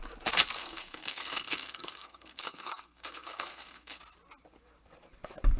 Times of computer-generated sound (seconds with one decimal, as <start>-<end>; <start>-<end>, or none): 0.6-4.0